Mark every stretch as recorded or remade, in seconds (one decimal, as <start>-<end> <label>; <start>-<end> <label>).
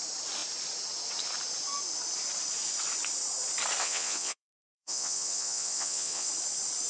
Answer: 0.0-3.8 recorded; 3.8-6.3 remade; 6.3-6.9 recorded